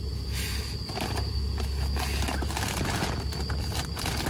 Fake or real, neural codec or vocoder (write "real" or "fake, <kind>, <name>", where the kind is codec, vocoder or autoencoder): real